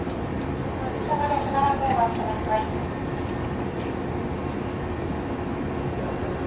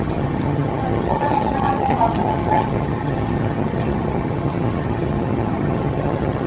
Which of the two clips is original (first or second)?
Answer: first